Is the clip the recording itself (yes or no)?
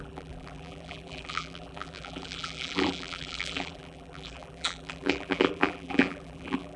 no